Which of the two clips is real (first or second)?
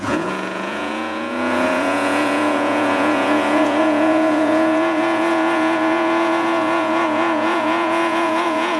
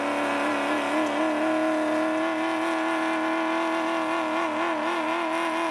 second